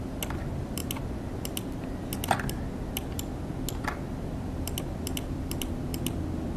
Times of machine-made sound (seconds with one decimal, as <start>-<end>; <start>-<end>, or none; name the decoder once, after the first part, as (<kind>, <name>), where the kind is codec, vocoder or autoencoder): none

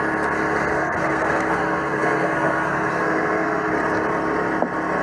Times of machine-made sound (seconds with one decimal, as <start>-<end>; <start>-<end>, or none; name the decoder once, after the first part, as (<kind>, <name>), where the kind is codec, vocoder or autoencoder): 0.7-3.7 (codec, SNAC)

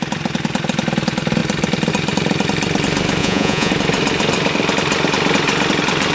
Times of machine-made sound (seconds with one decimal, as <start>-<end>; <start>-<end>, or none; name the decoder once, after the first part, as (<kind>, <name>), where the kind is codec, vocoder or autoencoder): 3.2-3.7 (vocoder, Vocos)

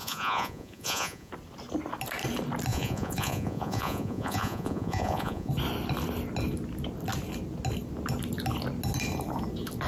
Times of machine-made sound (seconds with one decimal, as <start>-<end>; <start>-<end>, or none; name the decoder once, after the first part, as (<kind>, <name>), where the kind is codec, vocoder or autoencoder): 0.0-1.3 (vocoder, Vocos); 2.7-5.5

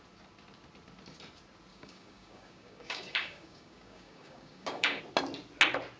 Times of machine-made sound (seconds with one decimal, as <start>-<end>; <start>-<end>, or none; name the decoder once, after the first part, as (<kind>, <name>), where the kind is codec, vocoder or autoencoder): 1.7-5.0 (codec, DAC)

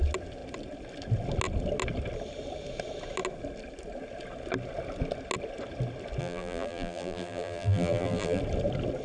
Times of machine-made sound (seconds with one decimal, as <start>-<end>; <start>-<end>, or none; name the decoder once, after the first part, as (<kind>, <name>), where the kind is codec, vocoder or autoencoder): 6.2-8.4 (vocoder, BigVGAN v2)